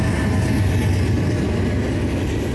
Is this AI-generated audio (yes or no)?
no